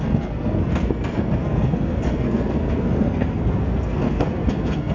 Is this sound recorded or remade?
remade